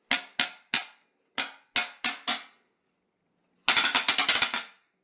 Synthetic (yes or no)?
no